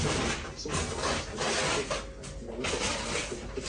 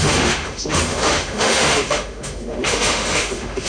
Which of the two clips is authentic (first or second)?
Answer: first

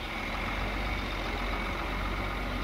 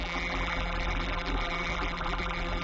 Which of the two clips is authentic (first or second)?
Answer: first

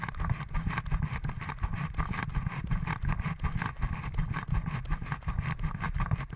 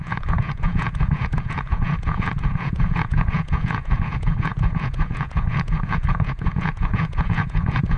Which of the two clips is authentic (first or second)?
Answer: first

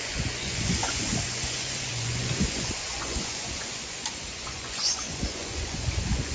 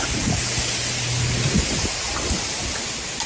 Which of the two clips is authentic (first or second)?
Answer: second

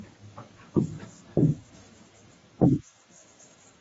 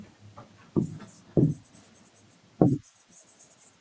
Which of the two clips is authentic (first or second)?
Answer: second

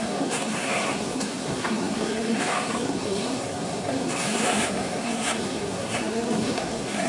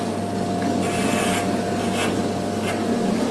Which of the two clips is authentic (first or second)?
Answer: second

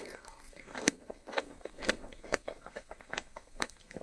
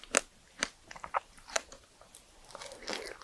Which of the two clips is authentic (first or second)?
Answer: second